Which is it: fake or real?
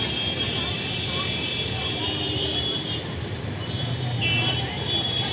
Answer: fake